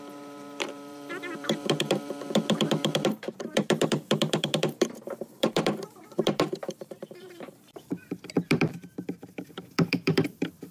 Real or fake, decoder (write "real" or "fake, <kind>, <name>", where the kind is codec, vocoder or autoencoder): fake, vocoder, BigVGAN v2